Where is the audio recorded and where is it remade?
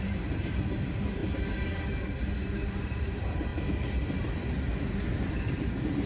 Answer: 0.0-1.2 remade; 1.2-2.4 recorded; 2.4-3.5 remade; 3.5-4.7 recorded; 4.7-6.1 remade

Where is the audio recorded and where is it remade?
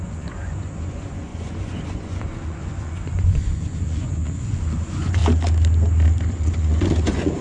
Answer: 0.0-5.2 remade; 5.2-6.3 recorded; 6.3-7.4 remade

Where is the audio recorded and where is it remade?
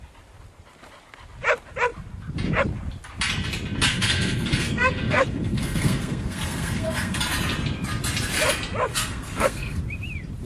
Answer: 0.0-3.9 recorded; 3.9-7.2 remade; 7.2-8.9 recorded; 8.9-9.8 remade; 9.8-10.4 recorded